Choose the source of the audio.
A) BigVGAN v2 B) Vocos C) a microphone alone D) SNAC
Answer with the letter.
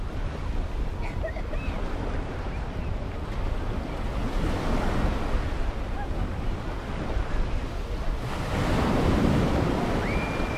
C